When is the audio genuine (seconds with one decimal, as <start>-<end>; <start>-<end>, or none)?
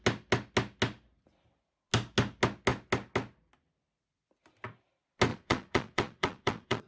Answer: 0.0-5.3